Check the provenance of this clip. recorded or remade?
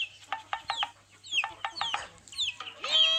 recorded